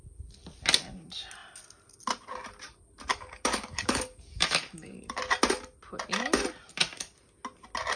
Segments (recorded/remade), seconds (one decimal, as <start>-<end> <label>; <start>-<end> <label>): 0.0-3.1 recorded; 3.1-5.2 remade; 5.2-8.0 recorded